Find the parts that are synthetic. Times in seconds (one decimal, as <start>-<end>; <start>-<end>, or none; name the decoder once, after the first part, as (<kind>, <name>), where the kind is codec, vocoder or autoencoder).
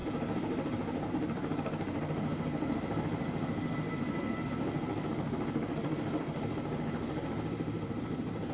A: 1.1-8.5 (vocoder, BigVGAN v2)